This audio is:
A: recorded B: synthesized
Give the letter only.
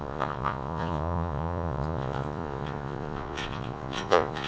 B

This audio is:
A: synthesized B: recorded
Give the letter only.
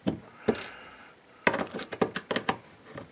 B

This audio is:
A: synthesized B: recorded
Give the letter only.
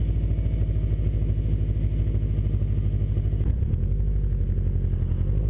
B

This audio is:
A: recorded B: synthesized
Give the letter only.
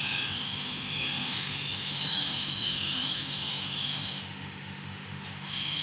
B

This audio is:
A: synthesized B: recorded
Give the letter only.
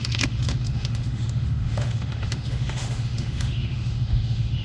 A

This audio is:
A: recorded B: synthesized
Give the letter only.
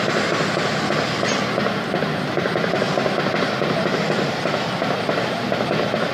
A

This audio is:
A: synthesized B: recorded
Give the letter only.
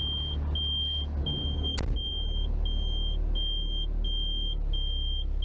B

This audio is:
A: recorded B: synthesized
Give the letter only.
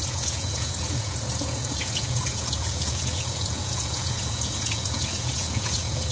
B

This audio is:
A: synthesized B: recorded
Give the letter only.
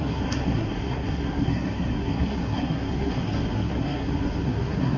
A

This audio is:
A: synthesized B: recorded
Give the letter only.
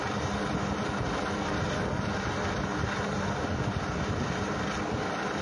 B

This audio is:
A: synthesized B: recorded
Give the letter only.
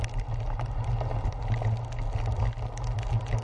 B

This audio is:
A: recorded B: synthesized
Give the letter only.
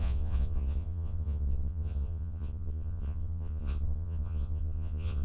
B